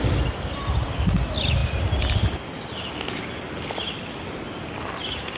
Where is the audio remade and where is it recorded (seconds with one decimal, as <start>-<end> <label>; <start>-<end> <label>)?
0.0-5.4 recorded